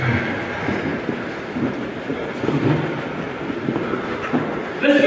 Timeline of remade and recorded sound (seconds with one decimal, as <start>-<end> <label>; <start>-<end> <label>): 0.0-5.1 recorded